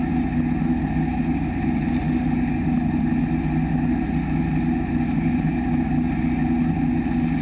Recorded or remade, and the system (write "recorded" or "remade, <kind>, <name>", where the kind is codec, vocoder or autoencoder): recorded